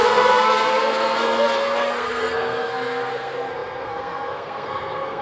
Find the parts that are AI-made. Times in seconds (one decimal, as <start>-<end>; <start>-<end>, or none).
0.0-5.2